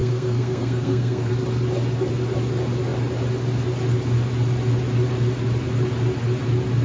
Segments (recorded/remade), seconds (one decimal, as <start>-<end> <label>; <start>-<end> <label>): 0.0-1.3 remade; 1.3-6.8 recorded